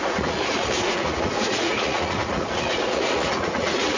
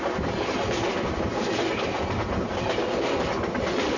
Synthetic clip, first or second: first